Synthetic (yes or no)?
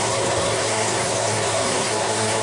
yes